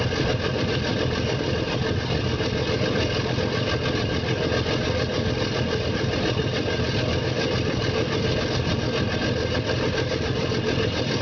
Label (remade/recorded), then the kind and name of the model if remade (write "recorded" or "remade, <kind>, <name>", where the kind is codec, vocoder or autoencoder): recorded